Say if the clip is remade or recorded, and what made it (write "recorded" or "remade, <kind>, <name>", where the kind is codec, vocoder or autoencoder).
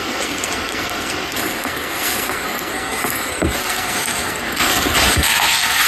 remade, codec, SNAC